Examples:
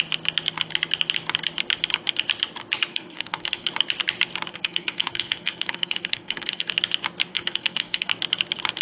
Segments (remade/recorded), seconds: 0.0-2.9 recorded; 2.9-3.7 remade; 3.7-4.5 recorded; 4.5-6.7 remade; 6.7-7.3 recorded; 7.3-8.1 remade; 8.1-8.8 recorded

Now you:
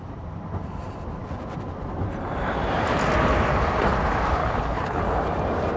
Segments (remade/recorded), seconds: 0.0-4.4 recorded; 4.4-5.0 remade; 5.0-5.8 recorded